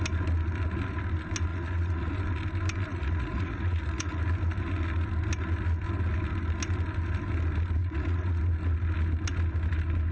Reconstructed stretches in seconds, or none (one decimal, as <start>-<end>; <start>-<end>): 1.5-2.1; 2.9-4.2; 7.8-8.4